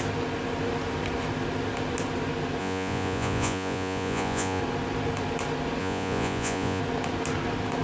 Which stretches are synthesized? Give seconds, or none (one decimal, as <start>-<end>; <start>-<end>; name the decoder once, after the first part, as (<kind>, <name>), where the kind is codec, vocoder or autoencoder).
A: 2.6-4.6 (vocoder, Vocos); 5.8-6.8